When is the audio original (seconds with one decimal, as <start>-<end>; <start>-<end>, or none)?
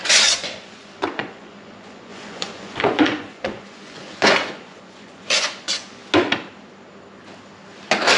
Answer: 6.0-8.2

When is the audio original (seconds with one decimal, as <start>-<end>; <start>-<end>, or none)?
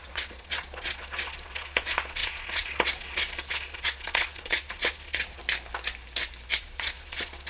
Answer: 5.4-6.6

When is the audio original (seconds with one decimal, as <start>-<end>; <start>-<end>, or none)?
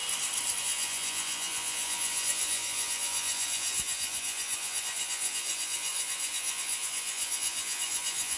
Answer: 0.0-0.6